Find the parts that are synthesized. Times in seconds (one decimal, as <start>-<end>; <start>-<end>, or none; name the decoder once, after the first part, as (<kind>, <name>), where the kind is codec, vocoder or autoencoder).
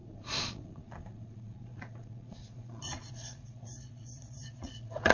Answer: 0.0-5.1 (vocoder, Vocos)